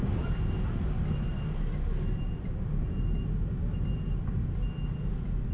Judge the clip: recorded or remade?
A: recorded